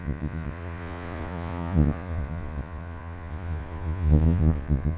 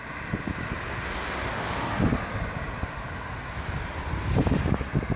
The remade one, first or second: first